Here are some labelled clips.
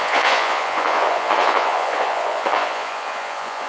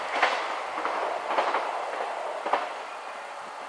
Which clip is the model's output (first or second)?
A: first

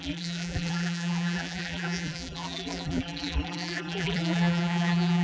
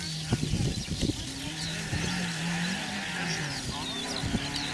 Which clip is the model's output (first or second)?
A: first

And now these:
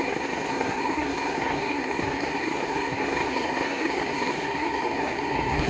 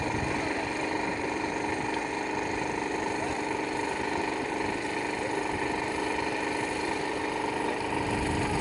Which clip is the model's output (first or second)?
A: first